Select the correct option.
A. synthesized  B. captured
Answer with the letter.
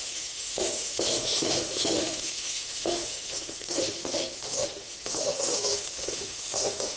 A